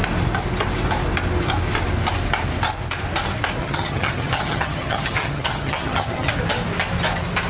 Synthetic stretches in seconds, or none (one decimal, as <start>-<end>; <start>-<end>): 3.6-6.3